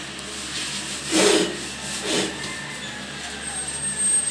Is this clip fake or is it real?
real